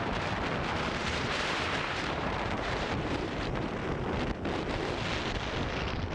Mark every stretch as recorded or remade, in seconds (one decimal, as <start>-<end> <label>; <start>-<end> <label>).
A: 0.0-1.0 recorded; 1.0-3.7 remade; 3.7-6.1 recorded